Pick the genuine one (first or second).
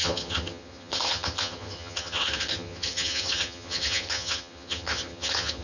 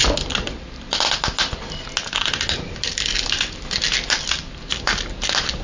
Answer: second